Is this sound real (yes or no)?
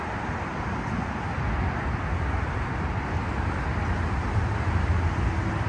yes